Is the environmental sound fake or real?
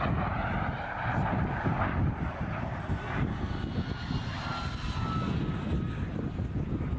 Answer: real